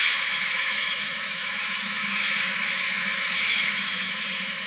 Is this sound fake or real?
fake